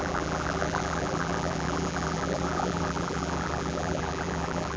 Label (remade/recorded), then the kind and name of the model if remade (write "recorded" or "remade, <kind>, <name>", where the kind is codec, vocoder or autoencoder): remade, vocoder, BigVGAN v2